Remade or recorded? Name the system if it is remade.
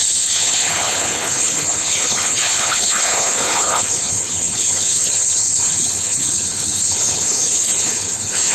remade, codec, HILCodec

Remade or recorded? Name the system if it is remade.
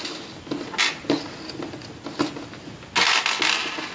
recorded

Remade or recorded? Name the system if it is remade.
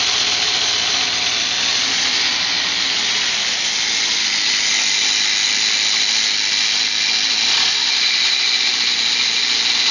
recorded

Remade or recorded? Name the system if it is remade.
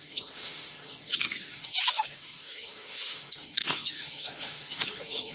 remade, autoencoder, DAC-VAE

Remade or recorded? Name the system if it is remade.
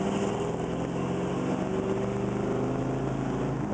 recorded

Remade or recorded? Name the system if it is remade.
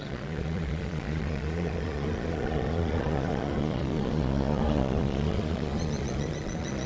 remade, vocoder, Vocos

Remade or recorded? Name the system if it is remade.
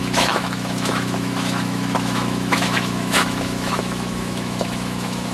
remade, autoencoder, DAC-VAE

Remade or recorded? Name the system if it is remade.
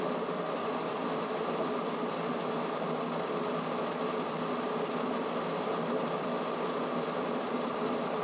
recorded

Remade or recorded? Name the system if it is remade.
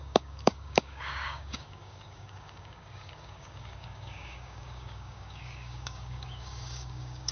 remade, codec, DAC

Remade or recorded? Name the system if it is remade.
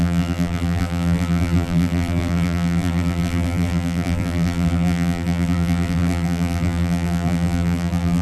remade, vocoder, BigVGAN v2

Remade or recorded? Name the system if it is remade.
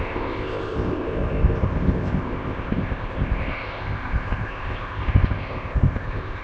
remade, codec, ZipCodec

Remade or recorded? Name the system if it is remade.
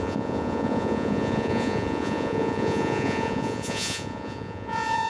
remade, vocoder, Vocos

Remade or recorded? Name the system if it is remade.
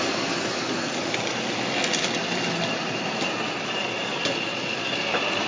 recorded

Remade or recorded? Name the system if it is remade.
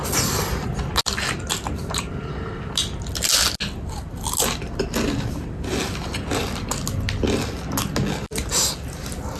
recorded